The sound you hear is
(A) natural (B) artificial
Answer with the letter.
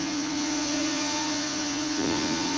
B